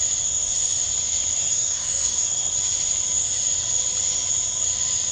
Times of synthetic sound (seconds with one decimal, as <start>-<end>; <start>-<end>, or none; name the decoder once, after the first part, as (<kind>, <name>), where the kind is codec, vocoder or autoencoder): 1.4-2.5 (codec, SNAC)